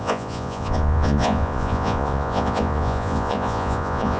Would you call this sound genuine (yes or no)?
no